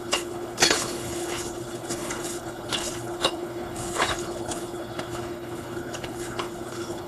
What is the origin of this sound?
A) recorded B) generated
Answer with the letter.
B